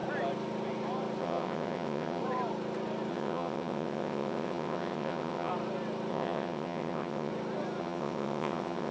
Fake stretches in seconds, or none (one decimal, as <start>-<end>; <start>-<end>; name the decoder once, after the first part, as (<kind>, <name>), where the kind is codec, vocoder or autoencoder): 1.2-2.2 (vocoder, WaveNeXt); 3.1-5.5; 6.1-7.3; 7.8-8.9